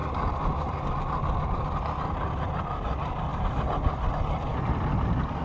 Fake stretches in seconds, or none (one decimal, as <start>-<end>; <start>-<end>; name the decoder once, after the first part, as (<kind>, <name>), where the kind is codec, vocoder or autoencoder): none